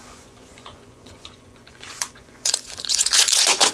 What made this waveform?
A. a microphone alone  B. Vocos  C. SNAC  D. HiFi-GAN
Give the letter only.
B